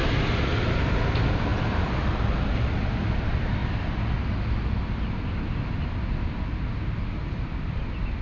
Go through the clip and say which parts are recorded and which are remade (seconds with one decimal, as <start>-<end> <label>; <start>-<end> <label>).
0.0-8.2 recorded